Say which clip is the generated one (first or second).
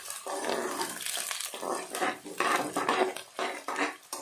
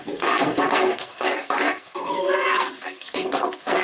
second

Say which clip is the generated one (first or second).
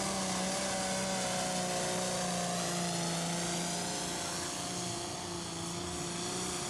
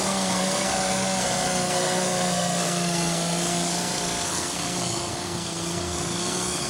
second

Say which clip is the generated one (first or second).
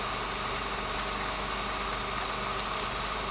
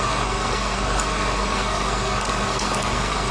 second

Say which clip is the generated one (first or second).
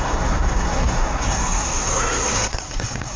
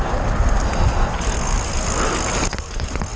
first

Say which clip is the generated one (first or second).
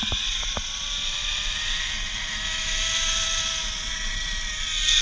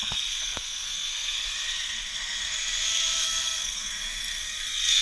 second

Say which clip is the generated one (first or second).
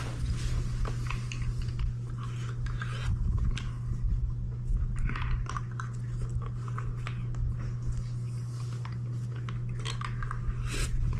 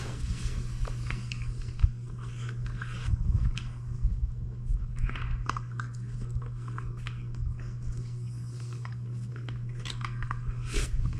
second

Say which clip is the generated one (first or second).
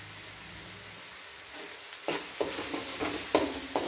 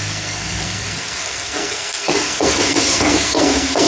second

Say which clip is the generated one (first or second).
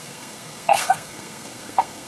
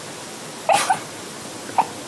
first